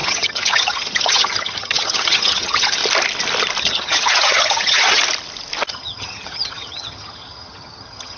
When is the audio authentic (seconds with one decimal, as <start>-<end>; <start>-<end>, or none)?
2.8-3.6; 5.0-5.7